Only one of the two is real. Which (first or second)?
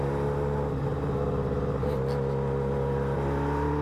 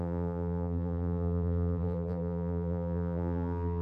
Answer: first